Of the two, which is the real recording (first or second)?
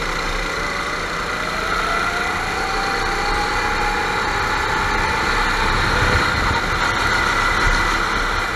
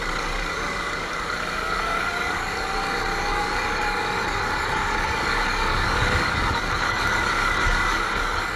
first